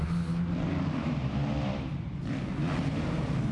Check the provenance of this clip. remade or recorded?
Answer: recorded